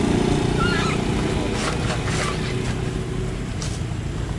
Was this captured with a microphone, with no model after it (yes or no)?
yes